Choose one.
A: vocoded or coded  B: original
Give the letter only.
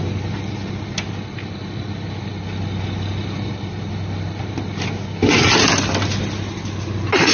B